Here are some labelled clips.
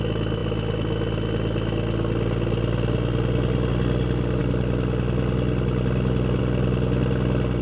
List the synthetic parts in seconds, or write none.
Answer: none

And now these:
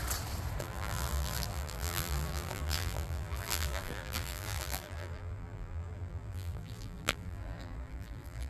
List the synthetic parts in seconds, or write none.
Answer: 0.6-8.5 (vocoder, BigVGAN v2)

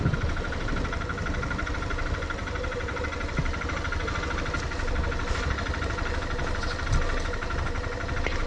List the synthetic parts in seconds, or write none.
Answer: 2.4-3.0 (vocoder, BigVGAN v2)